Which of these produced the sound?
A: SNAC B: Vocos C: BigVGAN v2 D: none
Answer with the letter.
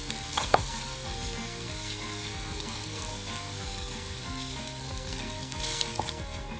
A